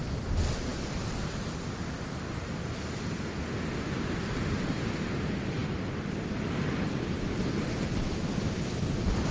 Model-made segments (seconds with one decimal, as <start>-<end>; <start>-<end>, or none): none